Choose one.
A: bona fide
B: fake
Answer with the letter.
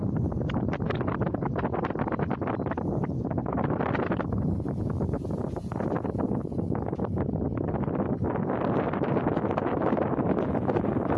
A